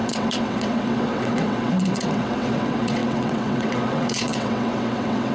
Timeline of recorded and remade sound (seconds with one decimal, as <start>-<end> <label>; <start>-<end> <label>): 0.0-5.3 remade